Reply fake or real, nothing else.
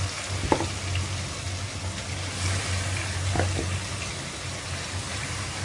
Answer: real